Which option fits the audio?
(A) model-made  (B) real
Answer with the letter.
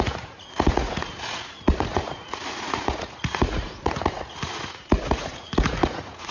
A